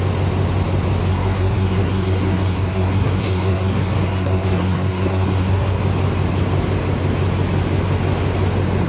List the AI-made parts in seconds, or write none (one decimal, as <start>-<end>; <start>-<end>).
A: 1.1-5.8

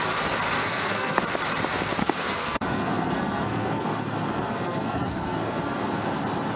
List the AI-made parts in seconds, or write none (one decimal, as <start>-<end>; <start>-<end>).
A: 0.6-1.2; 2.0-6.0

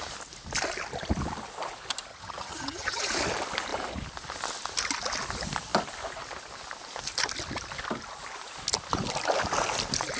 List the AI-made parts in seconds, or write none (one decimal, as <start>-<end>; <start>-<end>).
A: 2.1-3.0

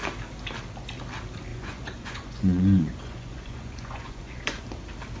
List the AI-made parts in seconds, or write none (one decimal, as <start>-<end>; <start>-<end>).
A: 1.5-4.6

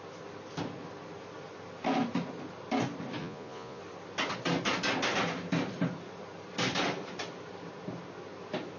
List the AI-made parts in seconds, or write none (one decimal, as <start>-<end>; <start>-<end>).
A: 3.2-3.8

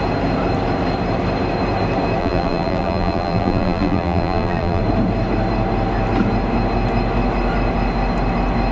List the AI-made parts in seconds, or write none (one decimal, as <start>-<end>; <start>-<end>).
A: 2.2-4.8